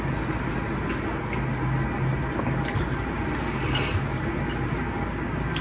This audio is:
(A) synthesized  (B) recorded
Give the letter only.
B